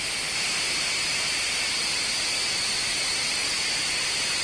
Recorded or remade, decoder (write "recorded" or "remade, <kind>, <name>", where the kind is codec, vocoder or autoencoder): recorded